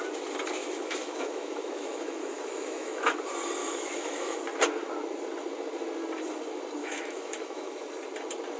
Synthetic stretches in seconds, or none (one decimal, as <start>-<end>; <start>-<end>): 0.6-3.1; 3.6-4.4; 6.8-7.8